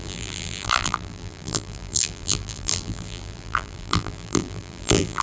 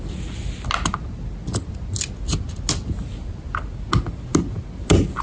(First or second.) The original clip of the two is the second